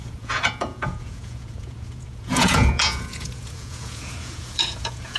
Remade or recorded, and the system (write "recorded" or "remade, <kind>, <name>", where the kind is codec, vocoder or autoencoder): remade, vocoder, Vocos